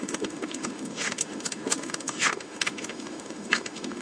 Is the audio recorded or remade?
remade